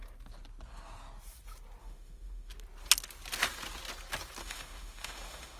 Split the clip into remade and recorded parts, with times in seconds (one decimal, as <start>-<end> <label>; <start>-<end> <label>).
0.0-1.8 recorded; 1.8-2.5 remade; 2.5-4.4 recorded; 4.4-5.6 remade